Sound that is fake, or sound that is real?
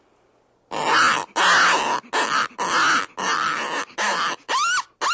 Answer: real